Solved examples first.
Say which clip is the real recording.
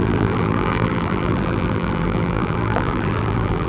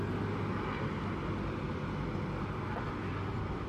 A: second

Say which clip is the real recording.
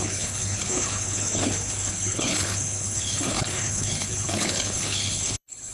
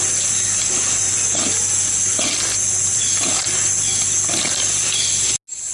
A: second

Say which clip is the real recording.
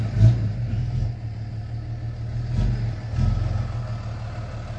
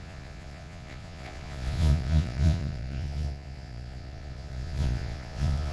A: first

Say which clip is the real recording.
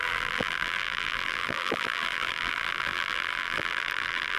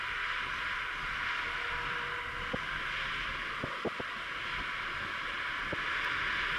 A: second